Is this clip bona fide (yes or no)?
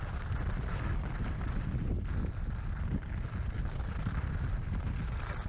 yes